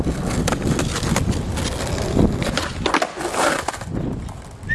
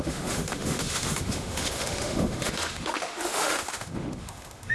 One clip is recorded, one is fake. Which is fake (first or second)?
second